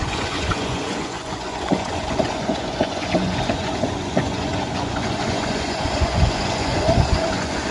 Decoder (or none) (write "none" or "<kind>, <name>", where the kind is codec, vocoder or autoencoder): vocoder, Vocos